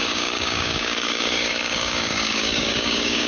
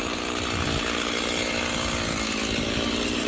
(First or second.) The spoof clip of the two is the first